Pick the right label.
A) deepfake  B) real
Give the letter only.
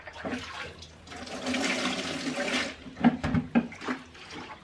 B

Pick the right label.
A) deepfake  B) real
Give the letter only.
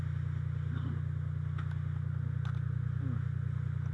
B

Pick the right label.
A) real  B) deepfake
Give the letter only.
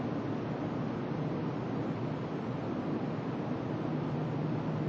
A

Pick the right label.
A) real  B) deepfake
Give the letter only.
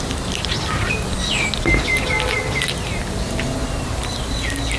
A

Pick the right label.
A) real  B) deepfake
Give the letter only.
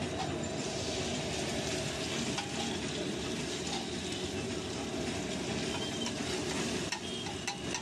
A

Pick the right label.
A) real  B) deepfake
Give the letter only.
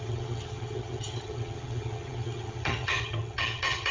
B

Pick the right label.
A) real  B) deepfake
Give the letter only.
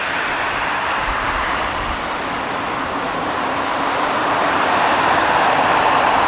B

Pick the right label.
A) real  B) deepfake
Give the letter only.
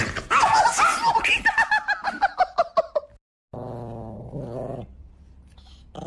A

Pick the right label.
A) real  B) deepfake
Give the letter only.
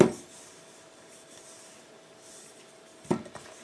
A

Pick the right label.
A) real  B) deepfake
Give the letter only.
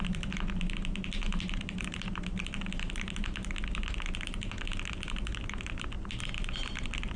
A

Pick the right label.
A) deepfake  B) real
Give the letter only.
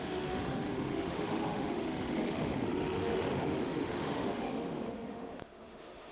A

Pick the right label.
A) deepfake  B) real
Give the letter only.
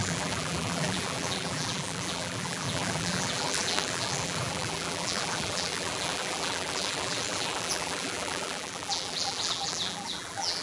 A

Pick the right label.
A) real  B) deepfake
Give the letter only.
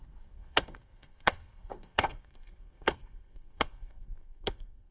B